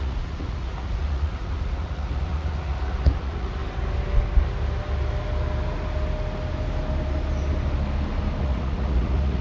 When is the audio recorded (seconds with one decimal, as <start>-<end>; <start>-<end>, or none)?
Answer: 3.6-8.4